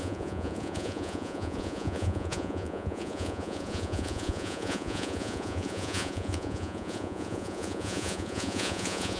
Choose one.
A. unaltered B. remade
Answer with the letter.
B